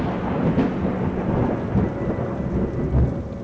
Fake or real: real